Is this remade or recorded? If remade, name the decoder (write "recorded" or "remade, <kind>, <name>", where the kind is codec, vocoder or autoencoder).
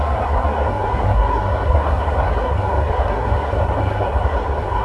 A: remade, codec, SNAC